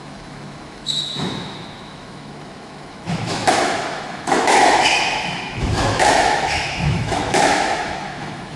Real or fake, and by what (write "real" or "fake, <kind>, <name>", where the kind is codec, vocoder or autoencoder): fake, autoencoder, DAC-VAE